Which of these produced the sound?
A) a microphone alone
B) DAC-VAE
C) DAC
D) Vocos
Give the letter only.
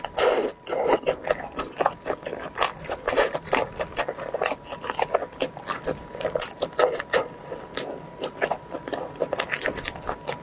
A